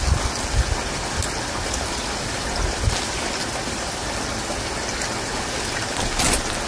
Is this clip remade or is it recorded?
recorded